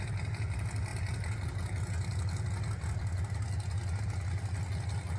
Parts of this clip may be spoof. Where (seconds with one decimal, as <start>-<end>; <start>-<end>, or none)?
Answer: none